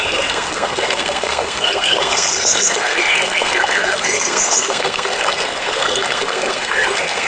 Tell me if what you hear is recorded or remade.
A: remade